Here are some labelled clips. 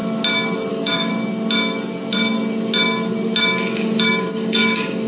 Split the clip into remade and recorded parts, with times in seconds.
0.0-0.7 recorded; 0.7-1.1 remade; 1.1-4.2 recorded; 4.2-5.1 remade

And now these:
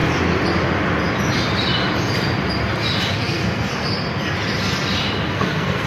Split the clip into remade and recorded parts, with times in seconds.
0.0-3.1 recorded; 3.1-3.9 remade; 3.9-5.3 recorded; 5.3-5.9 remade

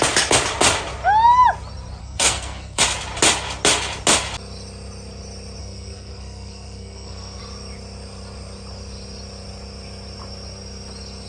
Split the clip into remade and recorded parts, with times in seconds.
0.0-2.0 recorded; 2.0-2.8 remade; 2.8-5.6 recorded; 5.6-7.4 remade; 7.4-11.3 recorded

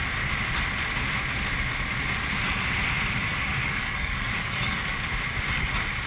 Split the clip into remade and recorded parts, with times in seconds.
0.0-3.6 recorded; 3.6-5.1 remade; 5.1-6.1 recorded

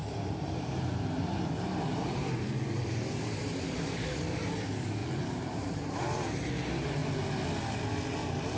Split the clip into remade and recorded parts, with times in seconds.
0.0-4.2 remade; 4.2-5.0 recorded; 5.0-6.2 remade; 6.2-8.6 recorded

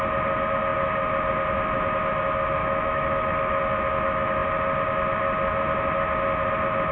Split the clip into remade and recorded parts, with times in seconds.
0.0-2.6 recorded; 2.6-3.6 remade; 3.6-6.9 recorded

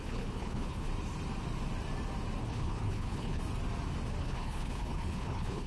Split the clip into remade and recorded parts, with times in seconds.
0.0-0.9 remade; 0.9-2.4 recorded; 2.4-3.4 remade; 3.4-4.2 recorded; 4.2-5.7 remade

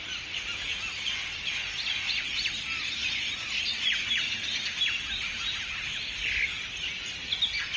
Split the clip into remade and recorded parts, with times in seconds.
0.0-7.8 recorded